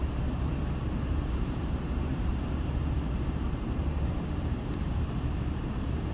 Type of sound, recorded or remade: remade